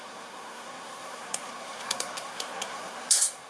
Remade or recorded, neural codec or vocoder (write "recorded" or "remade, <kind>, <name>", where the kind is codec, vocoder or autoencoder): remade, codec, SNAC